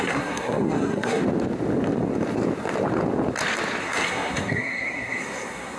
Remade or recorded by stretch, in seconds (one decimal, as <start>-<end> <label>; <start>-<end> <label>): 0.0-1.2 remade; 1.2-3.8 recorded; 3.8-5.8 remade